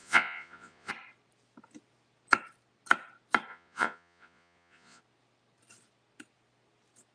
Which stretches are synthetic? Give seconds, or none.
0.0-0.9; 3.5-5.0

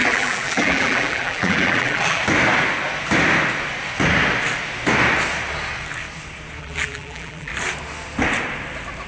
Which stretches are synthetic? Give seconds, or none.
0.0-2.2; 6.6-7.5

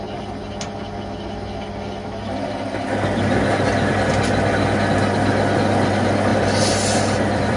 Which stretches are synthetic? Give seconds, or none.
6.3-7.6

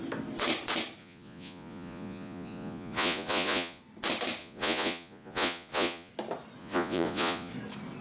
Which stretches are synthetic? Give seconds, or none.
1.0-3.8; 4.4-6.1; 6.6-7.5

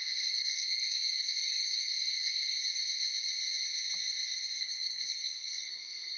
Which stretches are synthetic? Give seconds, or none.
0.0-2.6; 4.6-6.2